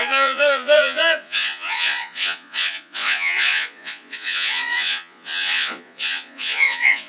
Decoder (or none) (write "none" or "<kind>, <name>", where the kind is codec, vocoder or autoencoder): vocoder, Vocos